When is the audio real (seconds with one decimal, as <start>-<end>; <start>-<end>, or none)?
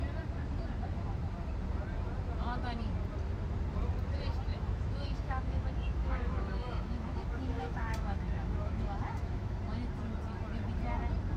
0.0-4.5; 9.6-11.4